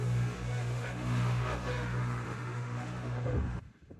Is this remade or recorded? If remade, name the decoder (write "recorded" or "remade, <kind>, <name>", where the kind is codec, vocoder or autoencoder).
remade, autoencoder, DAC-VAE